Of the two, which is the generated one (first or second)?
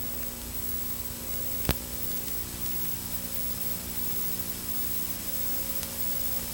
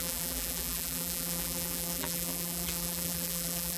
second